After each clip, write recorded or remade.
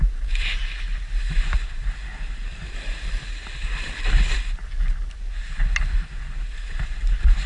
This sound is recorded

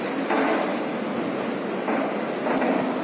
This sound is recorded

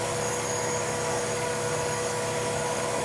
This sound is remade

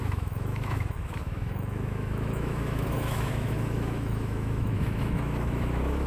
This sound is remade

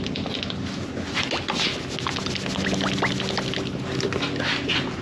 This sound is recorded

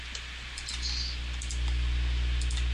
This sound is recorded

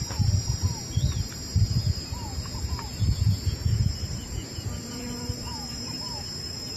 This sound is remade